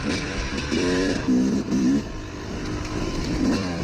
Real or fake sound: fake